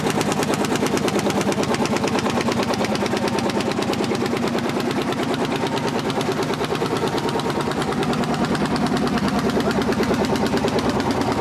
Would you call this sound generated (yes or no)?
no